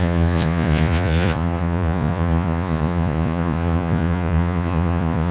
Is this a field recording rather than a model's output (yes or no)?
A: no